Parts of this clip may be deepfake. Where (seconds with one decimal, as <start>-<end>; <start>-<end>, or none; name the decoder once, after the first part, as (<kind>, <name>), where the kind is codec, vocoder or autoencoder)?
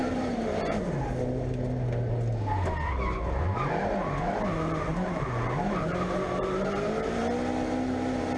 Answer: 0.0-1.0 (vocoder, BigVGAN v2); 4.9-7.2